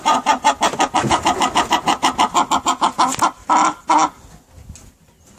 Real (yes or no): yes